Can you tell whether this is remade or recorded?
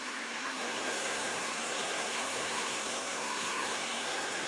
remade